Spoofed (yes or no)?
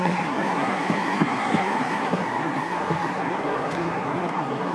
yes